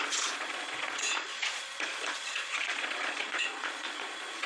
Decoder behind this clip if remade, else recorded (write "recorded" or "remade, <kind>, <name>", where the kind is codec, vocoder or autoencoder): remade, vocoder, Vocos